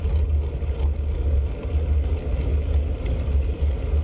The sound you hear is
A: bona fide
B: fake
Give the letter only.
A